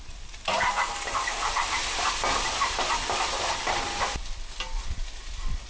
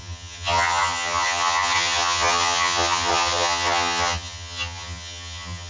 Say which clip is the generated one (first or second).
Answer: second